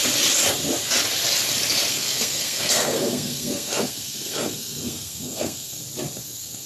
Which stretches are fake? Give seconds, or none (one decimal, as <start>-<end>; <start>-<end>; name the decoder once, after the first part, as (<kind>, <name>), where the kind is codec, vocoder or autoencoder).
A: 1.9-5.8 (codec, SNAC); 6.2-6.7